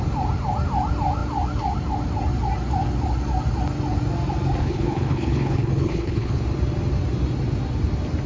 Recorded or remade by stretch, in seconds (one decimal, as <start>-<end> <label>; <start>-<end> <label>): 0.0-4.6 recorded; 4.6-6.4 remade; 6.4-8.3 recorded